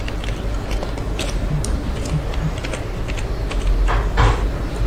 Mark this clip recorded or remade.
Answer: recorded